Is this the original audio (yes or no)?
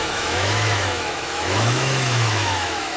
no